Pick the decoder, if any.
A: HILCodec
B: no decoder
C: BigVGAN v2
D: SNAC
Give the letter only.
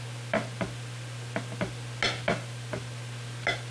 B